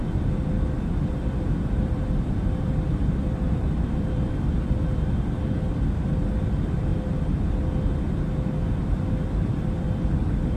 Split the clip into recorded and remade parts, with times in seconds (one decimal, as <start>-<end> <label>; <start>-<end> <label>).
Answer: 0.0-1.1 recorded; 1.1-6.9 remade; 6.9-9.1 recorded; 9.1-10.6 remade